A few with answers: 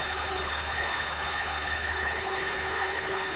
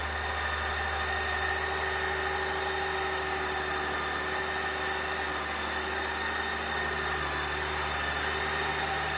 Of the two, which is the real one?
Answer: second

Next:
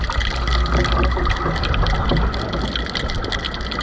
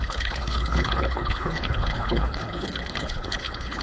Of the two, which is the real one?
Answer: first